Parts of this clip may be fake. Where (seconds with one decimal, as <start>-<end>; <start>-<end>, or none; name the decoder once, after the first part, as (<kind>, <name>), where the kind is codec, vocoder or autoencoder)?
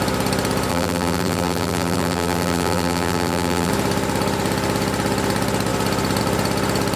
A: 0.7-3.7 (vocoder, BigVGAN v2)